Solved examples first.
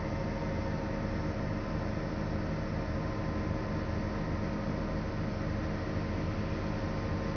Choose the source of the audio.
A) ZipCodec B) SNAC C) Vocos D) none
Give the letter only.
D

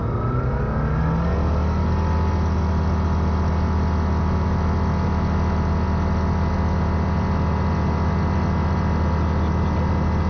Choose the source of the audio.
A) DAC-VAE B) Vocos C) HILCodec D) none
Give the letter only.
D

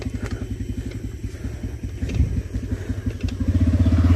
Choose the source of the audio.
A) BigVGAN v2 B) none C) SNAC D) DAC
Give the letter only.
B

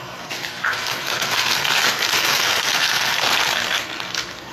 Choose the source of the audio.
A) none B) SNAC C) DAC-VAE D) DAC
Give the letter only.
B